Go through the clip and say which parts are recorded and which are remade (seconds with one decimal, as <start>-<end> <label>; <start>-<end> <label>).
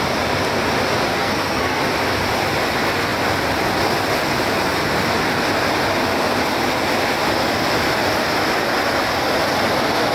0.0-1.1 recorded; 1.1-1.8 remade; 1.8-10.1 recorded